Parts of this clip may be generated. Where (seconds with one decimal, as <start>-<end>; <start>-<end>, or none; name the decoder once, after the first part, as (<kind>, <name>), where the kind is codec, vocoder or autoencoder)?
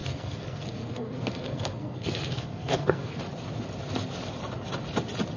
0.0-3.2 (codec, SNAC)